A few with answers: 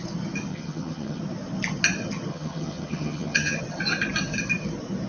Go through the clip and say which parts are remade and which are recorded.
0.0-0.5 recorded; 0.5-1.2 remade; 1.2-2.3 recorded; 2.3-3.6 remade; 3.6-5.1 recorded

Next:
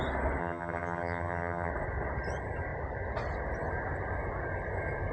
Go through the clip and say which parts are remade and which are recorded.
0.0-0.4 recorded; 0.4-1.7 remade; 1.7-5.1 recorded

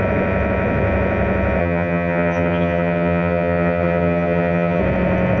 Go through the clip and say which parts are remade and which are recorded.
0.0-1.6 recorded; 1.6-4.8 remade; 4.8-5.4 recorded